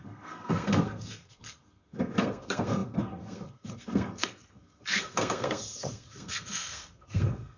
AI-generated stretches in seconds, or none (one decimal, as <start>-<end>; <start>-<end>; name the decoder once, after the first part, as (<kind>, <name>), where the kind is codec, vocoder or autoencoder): 0.0-7.6 (codec, SNAC)